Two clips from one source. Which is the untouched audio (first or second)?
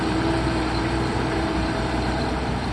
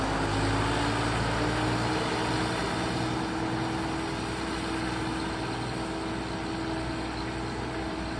second